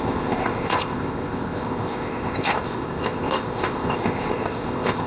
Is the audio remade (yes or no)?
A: yes